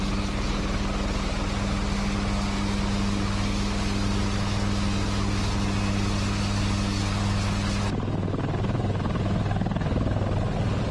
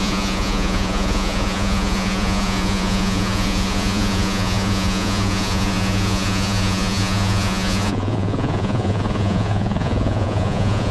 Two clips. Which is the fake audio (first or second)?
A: second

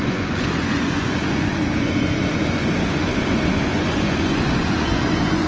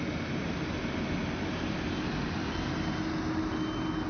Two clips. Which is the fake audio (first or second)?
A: first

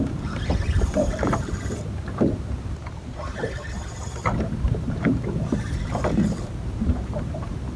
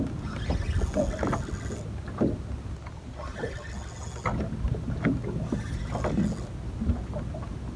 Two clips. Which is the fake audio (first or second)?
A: first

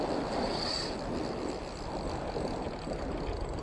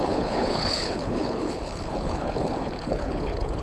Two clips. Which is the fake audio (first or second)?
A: second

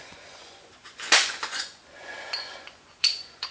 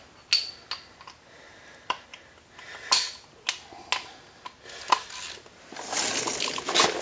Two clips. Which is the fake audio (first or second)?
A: first